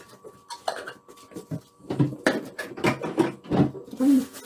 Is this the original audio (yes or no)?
no